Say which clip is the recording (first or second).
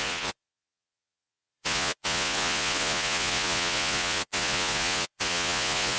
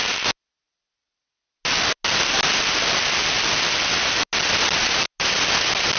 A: second